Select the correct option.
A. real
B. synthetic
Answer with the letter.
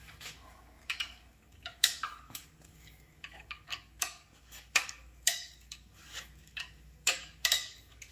B